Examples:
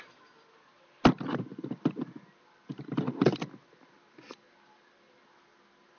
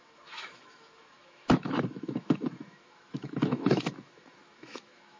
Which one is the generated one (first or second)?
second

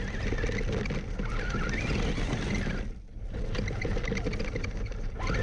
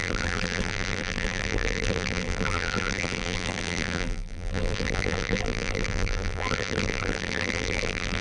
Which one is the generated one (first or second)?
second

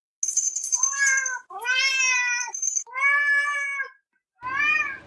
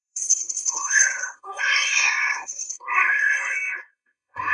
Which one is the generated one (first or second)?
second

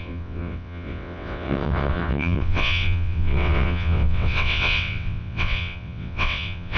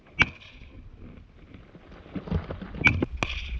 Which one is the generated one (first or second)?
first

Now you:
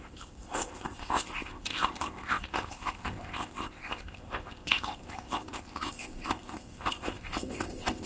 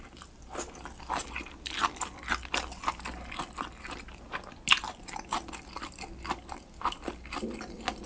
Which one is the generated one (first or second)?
first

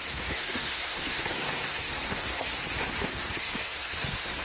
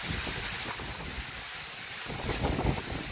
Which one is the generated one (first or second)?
first